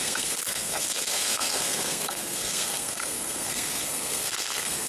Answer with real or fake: fake